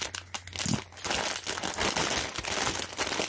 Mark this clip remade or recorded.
recorded